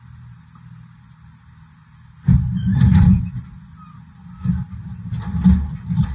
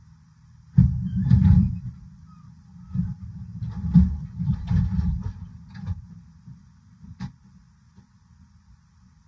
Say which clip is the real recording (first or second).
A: first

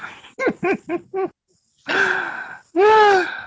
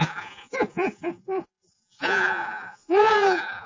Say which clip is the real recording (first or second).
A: first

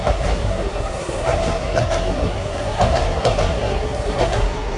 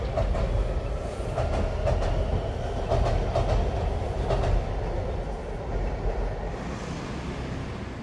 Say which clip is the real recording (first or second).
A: second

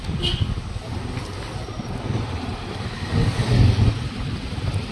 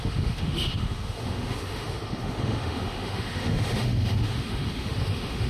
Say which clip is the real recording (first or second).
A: first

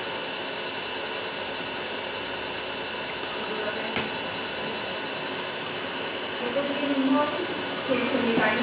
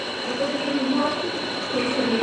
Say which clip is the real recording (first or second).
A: first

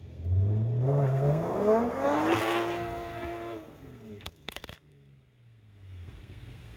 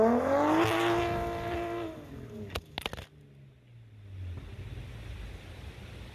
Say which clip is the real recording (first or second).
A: second